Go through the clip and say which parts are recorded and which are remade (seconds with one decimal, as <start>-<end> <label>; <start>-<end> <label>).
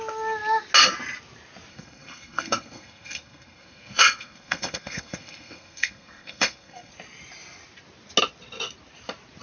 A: 0.0-1.7 recorded; 1.7-6.9 remade; 6.9-9.4 recorded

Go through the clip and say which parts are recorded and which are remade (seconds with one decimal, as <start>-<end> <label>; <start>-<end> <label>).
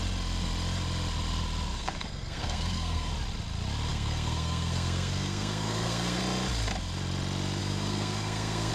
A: 0.0-1.7 recorded; 1.7-3.1 remade; 3.1-3.9 recorded; 3.9-6.2 remade; 6.2-7.6 recorded; 7.6-8.7 remade